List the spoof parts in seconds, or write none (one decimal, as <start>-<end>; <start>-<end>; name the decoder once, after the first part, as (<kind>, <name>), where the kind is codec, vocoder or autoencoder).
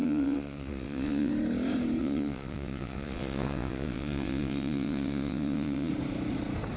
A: 0.0-1.3 (vocoder, WaveNeXt); 2.0-5.9